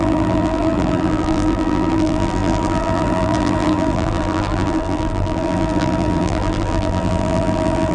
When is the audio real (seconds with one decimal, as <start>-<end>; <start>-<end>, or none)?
none